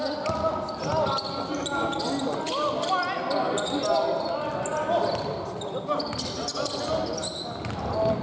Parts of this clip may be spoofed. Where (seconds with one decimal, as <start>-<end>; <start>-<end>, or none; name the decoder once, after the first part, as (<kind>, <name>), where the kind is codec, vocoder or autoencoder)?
none